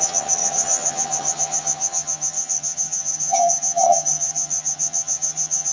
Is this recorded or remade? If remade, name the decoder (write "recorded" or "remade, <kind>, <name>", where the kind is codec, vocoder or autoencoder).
remade, vocoder, HiFi-GAN